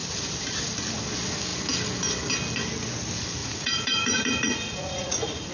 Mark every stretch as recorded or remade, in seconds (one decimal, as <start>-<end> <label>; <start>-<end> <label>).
0.0-3.4 recorded; 3.4-5.5 remade